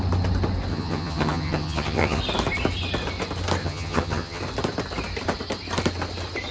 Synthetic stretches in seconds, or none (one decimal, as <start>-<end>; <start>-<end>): 0.7-2.2; 3.6-4.4